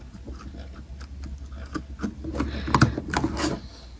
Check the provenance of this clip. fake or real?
real